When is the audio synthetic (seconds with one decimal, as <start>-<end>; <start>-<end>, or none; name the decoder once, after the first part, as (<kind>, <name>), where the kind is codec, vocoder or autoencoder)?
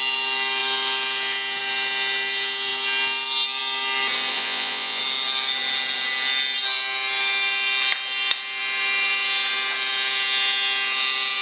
4.3-5.0 (vocoder, Vocos)